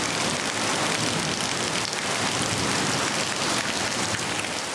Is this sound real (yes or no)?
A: yes